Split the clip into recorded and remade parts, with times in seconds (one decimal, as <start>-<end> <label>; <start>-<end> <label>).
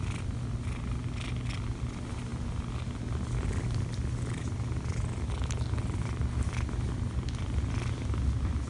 0.0-8.7 recorded